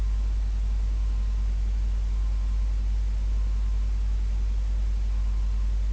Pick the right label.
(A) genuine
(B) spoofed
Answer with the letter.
A